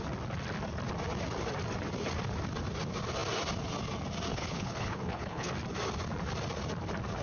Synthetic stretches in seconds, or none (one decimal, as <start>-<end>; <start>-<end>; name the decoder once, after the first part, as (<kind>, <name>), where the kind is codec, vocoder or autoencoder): 4.3-5.5 (codec, HILCodec)